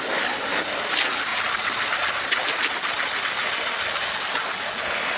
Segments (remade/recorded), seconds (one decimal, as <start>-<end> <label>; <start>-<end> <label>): 0.0-5.2 recorded